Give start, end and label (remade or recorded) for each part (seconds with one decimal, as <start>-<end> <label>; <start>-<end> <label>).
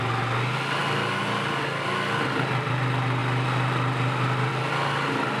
0.0-5.4 recorded